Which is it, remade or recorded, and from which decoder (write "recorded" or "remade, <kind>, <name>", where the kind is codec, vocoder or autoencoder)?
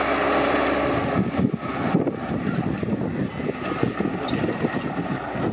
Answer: recorded